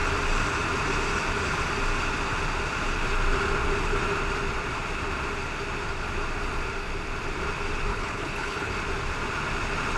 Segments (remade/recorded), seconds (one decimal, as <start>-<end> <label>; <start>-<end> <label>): 0.0-7.9 recorded; 7.9-8.7 remade; 8.7-10.0 recorded